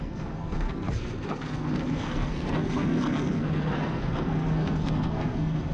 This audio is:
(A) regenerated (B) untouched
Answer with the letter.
A